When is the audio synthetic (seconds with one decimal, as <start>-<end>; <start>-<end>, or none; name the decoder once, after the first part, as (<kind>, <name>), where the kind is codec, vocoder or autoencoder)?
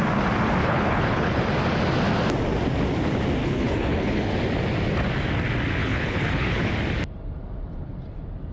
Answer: 0.6-1.4 (codec, HILCodec); 3.4-4.3; 5.8-6.7